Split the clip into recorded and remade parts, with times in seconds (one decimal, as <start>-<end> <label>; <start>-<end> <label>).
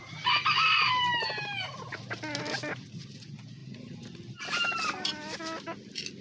0.0-3.6 recorded; 3.6-5.4 remade; 5.4-6.2 recorded